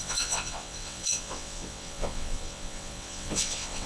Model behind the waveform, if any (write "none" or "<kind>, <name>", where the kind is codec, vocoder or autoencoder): vocoder, WaveNeXt